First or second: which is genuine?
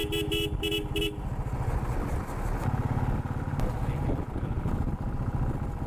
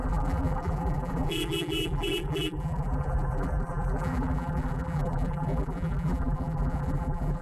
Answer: first